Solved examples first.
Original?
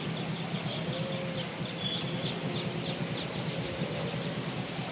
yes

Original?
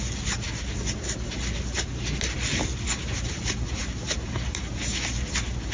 yes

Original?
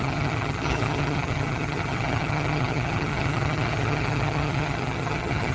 no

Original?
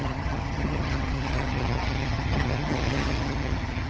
no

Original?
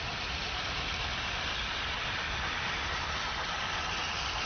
yes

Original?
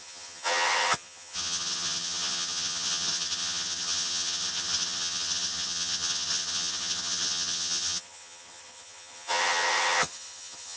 no